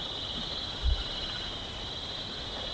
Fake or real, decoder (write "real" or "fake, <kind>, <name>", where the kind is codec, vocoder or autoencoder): real